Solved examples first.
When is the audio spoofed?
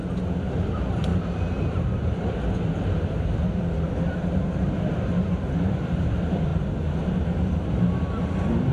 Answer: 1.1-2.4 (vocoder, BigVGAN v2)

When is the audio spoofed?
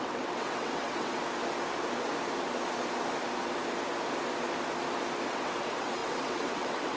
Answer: 0.0-1.2 (vocoder, WaveNeXt); 5.3-7.0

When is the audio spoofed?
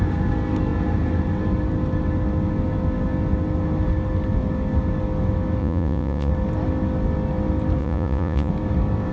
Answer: 5.6-6.3 (vocoder, Vocos); 7.8-8.5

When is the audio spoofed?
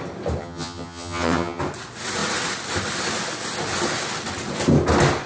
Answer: 0.4-1.6 (vocoder, HiFi-GAN)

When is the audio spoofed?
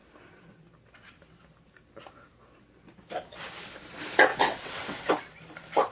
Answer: 4.3-5.1 (vocoder, WaveNeXt)